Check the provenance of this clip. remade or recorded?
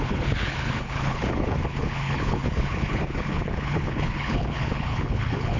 remade